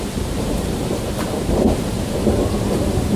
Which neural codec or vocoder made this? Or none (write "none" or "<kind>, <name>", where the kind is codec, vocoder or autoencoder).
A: vocoder, BigVGAN v2